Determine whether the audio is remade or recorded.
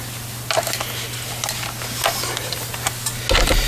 recorded